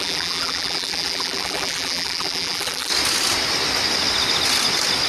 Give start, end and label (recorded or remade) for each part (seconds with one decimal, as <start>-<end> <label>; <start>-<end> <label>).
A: 0.0-2.9 remade; 2.9-5.1 recorded